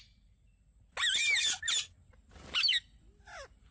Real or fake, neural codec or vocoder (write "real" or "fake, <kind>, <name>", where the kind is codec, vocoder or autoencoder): real